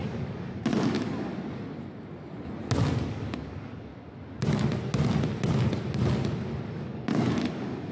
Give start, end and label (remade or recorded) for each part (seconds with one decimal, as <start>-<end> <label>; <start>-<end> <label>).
0.0-1.3 remade; 1.3-3.1 recorded; 3.1-3.9 remade; 3.9-6.7 recorded; 6.7-7.9 remade